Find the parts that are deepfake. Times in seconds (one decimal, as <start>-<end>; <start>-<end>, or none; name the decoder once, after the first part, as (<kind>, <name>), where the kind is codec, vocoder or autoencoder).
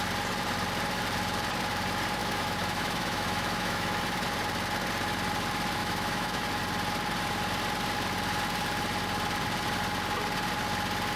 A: 2.2-4.0 (autoencoder, DAC-VAE); 5.8-6.5